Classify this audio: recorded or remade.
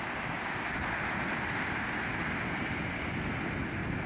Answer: recorded